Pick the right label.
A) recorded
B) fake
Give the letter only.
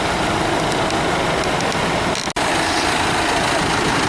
A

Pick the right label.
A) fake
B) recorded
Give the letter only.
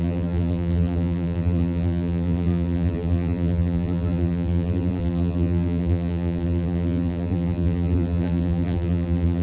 A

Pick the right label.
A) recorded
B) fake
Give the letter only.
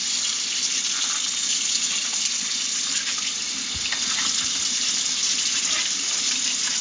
A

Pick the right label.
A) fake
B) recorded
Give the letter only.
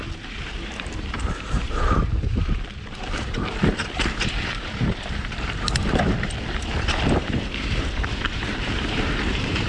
A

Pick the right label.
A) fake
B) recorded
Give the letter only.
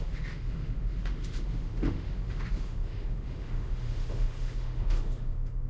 A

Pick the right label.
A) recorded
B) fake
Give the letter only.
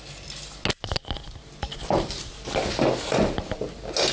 A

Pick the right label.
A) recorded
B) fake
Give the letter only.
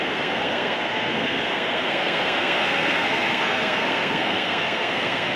B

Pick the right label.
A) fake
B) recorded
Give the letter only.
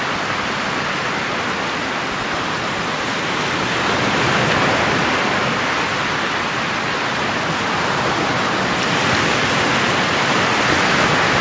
B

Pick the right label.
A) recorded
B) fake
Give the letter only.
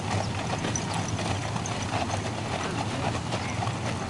A